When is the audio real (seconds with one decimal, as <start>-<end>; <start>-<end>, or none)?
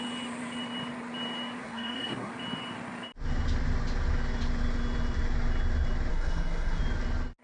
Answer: 0.0-1.6; 2.3-6.1; 6.8-7.4